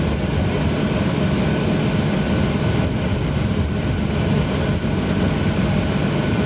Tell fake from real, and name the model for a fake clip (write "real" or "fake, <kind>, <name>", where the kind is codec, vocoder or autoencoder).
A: real